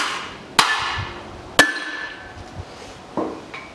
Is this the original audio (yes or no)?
yes